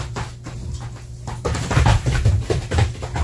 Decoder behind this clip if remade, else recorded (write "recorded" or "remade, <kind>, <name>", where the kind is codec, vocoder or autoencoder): recorded